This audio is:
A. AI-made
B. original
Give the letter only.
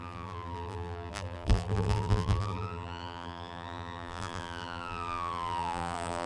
A